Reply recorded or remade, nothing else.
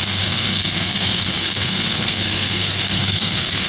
remade